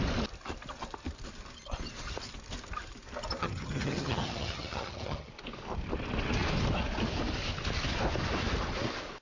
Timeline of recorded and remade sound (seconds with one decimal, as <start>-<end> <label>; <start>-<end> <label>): 0.0-3.4 recorded; 3.4-5.3 remade; 5.3-9.2 recorded